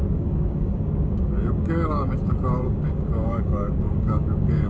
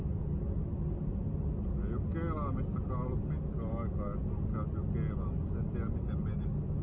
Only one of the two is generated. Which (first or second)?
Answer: first